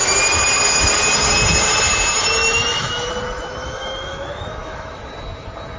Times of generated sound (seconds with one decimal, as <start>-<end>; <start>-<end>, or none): 2.4-3.1; 3.6-5.0